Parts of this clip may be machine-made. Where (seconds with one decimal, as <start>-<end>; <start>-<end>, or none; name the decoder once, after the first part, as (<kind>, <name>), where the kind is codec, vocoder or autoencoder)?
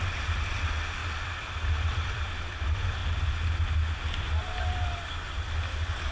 1.0-2.6 (vocoder, BigVGAN v2)